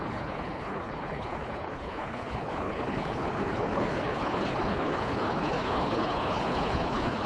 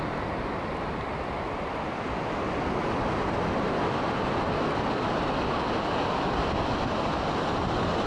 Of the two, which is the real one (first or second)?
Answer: second